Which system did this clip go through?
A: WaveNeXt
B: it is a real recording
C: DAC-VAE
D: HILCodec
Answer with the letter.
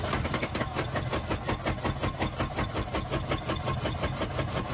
B